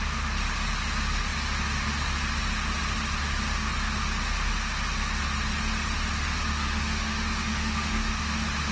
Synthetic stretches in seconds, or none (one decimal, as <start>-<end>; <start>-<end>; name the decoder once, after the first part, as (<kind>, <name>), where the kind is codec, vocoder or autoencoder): 6.5-8.1 (autoencoder, DAC-VAE)